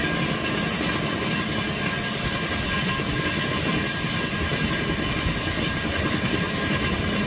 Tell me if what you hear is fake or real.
real